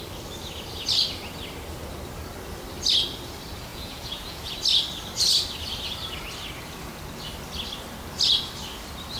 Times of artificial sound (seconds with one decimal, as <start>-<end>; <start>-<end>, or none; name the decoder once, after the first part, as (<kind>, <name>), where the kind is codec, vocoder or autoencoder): 3.7-4.5 (vocoder, Vocos)